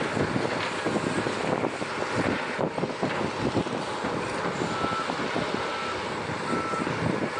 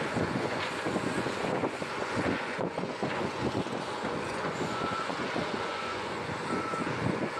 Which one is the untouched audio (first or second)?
first